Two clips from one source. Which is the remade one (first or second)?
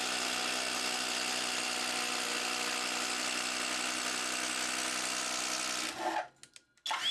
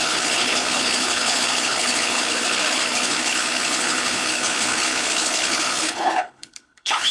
second